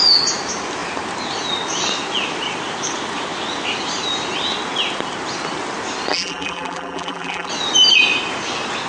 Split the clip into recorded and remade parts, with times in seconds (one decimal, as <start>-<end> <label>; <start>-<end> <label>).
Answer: 0.0-6.1 recorded; 6.1-7.5 remade; 7.5-8.9 recorded